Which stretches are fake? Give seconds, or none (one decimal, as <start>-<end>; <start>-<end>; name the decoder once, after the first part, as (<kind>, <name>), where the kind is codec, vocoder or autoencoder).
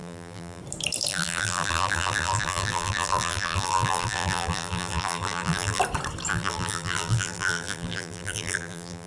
0.0-0.6 (vocoder, BigVGAN v2); 1.1-5.8; 6.3-9.1